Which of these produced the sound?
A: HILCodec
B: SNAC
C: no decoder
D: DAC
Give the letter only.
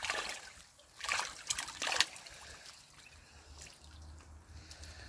C